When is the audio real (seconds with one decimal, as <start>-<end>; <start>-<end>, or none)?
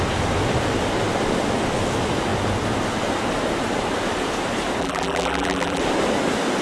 0.0-4.8; 5.8-6.6